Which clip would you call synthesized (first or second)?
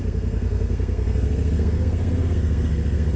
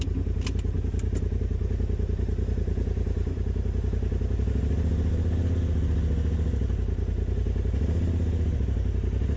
first